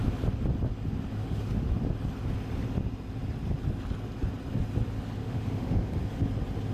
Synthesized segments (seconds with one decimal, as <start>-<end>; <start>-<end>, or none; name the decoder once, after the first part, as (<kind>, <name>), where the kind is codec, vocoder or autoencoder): 1.1-1.7 (autoencoder, DAC-VAE); 5.2-5.9